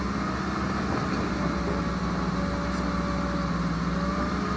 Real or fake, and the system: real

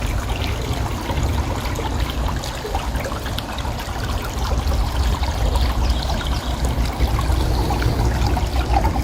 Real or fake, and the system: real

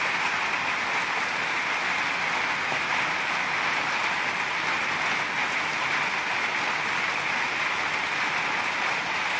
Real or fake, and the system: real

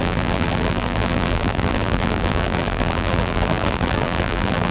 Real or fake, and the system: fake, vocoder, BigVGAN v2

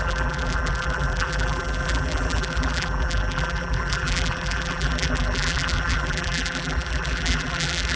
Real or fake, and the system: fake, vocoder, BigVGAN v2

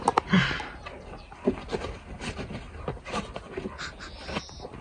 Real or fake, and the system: real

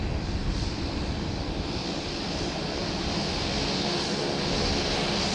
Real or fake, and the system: real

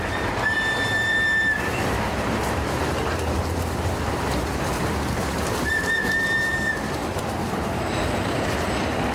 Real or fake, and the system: fake, vocoder, BigVGAN v2